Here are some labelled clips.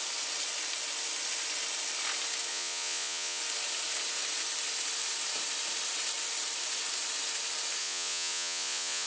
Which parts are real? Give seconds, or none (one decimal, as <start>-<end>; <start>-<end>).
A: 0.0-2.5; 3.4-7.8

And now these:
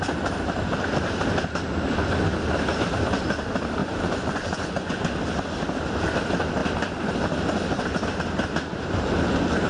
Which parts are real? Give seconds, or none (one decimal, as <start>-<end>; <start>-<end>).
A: 0.0-3.8; 5.0-9.7

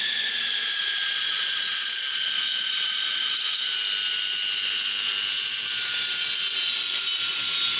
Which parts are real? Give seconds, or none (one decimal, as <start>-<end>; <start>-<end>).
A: 3.8-7.8

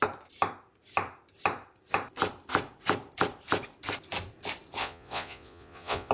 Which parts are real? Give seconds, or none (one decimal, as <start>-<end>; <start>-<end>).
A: 0.0-4.8

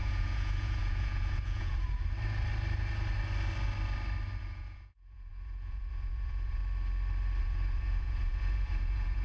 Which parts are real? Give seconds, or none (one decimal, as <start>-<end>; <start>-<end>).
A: 2.0-4.4; 6.6-7.4

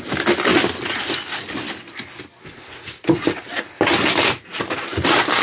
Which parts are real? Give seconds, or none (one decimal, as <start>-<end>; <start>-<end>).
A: 0.0-5.4

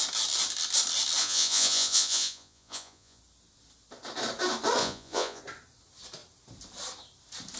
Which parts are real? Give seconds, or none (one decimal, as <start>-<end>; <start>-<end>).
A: 0.0-1.2; 3.2-4.8; 5.4-7.6